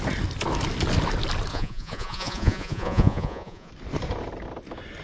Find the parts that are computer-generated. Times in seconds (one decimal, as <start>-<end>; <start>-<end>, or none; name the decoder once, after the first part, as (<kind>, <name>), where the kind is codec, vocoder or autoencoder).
1.5-3.7 (vocoder, Vocos)